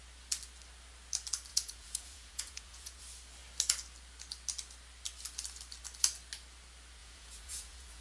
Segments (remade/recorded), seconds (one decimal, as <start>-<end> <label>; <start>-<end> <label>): 0.0-1.5 recorded; 1.5-3.0 remade; 3.0-7.0 recorded; 7.0-8.0 remade